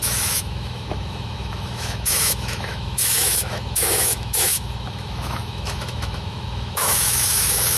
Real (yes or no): no